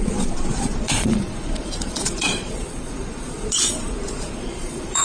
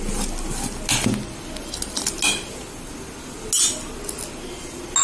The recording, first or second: second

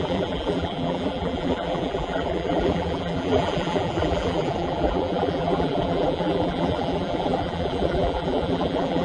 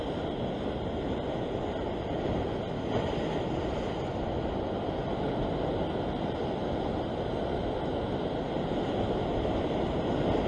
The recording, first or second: second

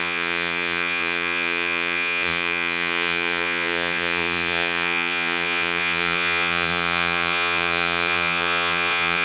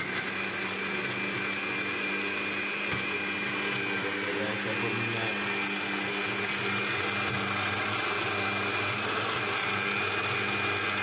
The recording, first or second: second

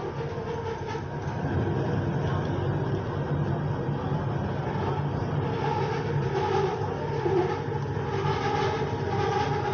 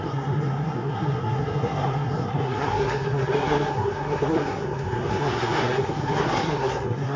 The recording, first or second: first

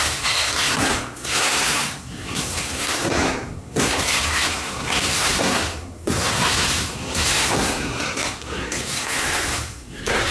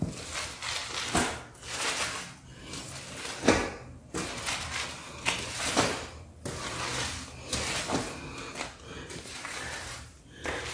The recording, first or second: second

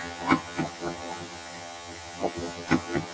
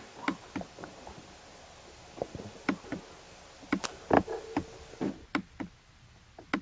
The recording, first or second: second